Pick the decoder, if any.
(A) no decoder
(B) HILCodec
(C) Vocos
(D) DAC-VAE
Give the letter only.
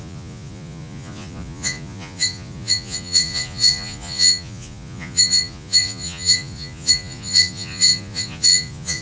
C